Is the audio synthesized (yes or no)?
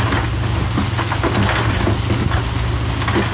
no